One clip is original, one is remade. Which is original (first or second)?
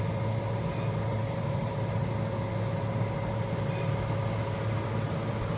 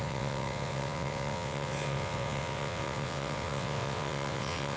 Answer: first